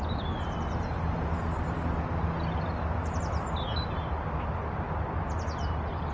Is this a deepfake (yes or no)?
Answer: no